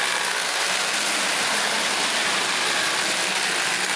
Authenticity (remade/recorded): recorded